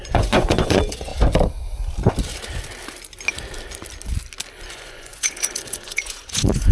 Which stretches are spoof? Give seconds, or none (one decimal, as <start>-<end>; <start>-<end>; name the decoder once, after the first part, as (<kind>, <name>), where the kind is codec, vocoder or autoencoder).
0.0-1.1 (vocoder, Vocos); 4.7-6.7